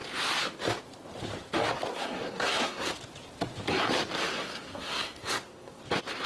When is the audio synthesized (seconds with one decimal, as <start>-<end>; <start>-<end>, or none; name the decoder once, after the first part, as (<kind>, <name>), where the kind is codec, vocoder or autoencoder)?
1.9-2.9 (codec, SNAC); 4.3-5.8